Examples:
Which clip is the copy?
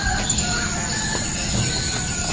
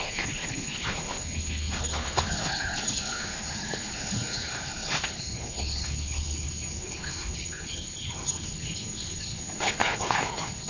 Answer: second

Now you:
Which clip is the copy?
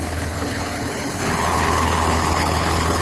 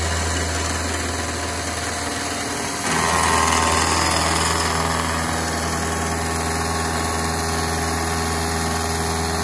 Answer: first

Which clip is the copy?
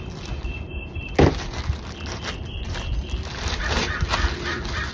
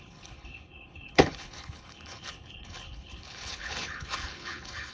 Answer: second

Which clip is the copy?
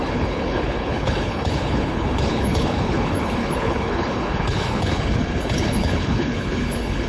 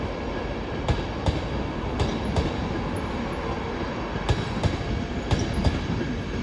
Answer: first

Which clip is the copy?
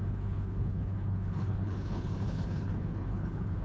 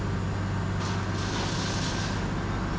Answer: first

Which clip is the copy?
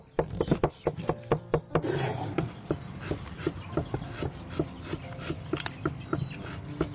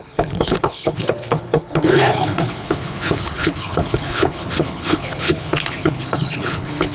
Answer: second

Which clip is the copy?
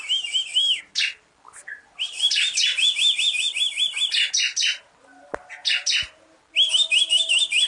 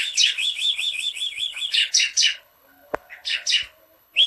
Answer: second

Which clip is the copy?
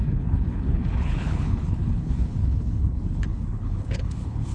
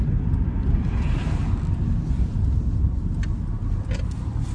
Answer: first